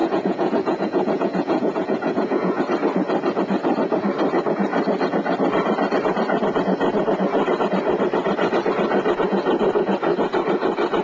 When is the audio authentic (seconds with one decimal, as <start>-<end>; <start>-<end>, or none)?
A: 2.6-11.0